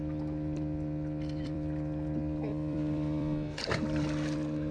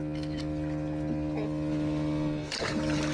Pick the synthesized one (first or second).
first